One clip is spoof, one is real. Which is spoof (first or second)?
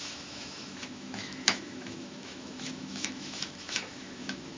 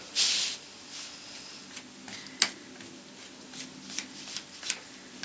first